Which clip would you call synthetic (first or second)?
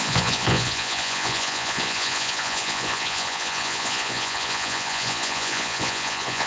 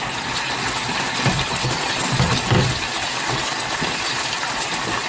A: first